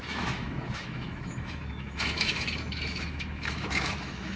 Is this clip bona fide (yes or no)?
no